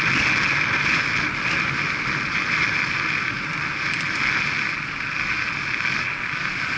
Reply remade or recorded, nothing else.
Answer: recorded